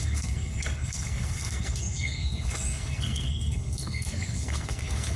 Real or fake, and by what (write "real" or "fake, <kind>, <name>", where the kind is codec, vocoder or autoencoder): fake, codec, SNAC